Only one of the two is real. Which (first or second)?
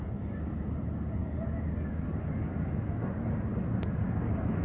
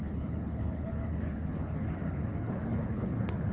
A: first